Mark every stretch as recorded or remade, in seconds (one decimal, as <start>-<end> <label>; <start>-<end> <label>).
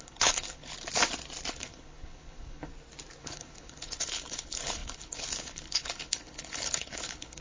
0.0-0.7 remade; 0.7-1.5 recorded; 1.5-2.7 remade; 2.7-3.2 recorded; 3.2-7.4 remade